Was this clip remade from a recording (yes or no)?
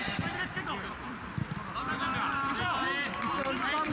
no